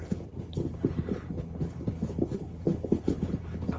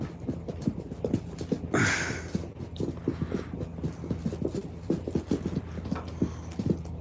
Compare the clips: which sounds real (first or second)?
second